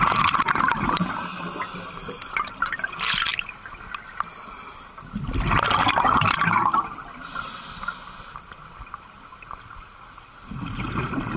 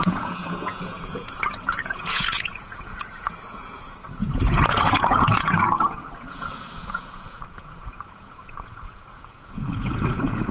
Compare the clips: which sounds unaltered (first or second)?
first